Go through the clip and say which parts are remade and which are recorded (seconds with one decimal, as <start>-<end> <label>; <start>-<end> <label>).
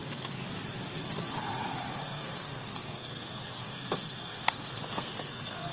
0.0-2.0 recorded; 2.0-5.7 remade